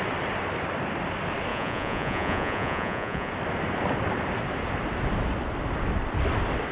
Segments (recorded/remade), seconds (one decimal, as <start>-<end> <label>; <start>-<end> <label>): 0.0-1.5 recorded; 1.5-3.3 remade; 3.3-6.7 recorded